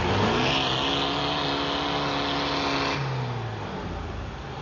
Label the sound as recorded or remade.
recorded